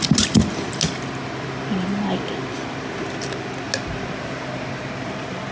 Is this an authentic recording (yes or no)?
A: yes